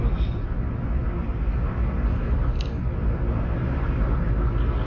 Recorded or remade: recorded